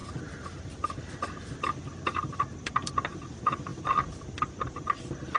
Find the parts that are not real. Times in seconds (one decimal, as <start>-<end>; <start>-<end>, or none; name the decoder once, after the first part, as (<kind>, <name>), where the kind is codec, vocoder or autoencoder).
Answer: 0.0-1.8 (vocoder, BigVGAN v2); 3.7-4.5